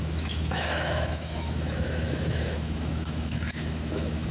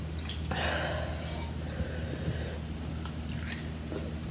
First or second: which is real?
second